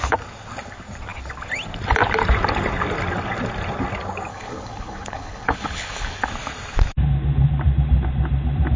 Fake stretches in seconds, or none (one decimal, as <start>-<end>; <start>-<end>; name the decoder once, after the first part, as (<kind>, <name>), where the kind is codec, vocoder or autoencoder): 4.3-6.3 (codec, HILCodec)